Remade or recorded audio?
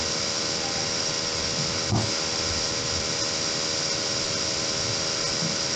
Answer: recorded